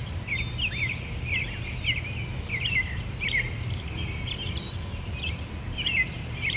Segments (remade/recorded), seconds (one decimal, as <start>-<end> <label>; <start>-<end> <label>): 0.0-2.3 recorded; 2.3-6.6 remade

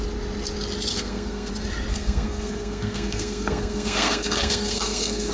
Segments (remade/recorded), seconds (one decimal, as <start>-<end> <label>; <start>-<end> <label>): 0.0-0.9 recorded; 0.9-1.5 remade; 1.5-1.9 recorded; 1.9-5.3 remade

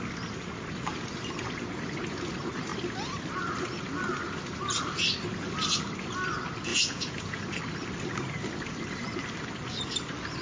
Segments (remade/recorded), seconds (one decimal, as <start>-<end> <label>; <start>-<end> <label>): 0.0-6.7 recorded; 6.7-7.4 remade; 7.4-10.4 recorded

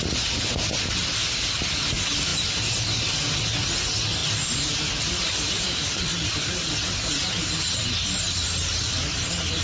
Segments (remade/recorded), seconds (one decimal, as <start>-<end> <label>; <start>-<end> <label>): 0.0-4.2 recorded; 4.2-7.3 remade; 7.3-9.6 recorded

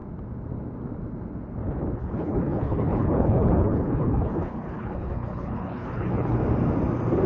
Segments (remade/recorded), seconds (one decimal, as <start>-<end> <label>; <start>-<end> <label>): 0.0-2.0 recorded; 2.0-6.4 remade; 6.4-7.3 recorded

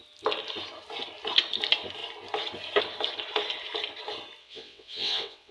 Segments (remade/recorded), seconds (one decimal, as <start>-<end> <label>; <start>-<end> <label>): 0.0-4.4 recorded; 4.4-5.5 remade